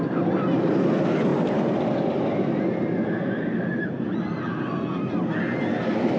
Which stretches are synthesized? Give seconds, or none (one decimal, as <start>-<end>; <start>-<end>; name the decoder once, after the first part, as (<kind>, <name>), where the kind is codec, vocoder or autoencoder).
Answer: none